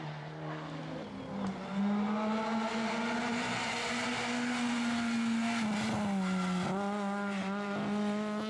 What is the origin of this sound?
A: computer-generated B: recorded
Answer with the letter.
B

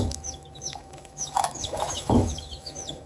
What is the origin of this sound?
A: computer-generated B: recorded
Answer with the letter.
A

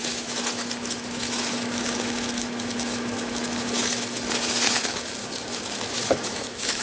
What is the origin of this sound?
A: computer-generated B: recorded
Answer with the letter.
A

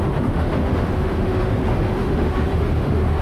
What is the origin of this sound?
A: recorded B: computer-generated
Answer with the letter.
B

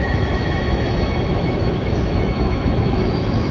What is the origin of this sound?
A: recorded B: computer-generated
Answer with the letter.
B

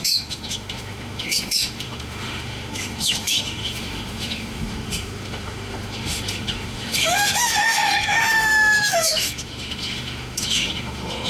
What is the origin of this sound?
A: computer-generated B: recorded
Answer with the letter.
A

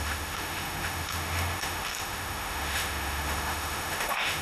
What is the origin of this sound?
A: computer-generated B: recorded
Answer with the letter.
A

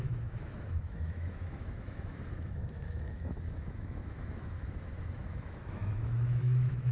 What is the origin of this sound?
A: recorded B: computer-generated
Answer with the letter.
B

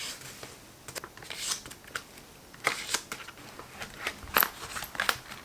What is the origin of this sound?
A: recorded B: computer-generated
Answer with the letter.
A